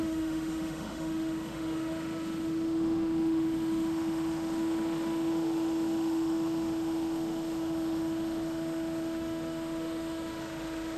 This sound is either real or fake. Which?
fake